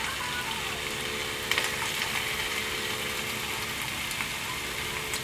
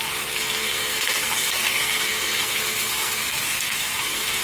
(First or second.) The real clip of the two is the first